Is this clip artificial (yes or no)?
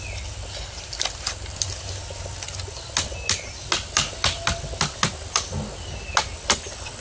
no